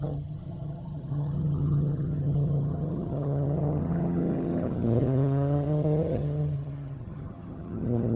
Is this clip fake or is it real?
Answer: fake